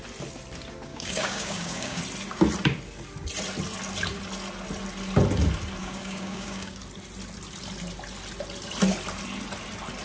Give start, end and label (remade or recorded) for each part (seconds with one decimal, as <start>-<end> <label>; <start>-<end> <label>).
0.0-0.9 recorded; 0.9-2.0 remade; 2.0-5.8 recorded; 5.8-6.8 remade; 6.8-10.0 recorded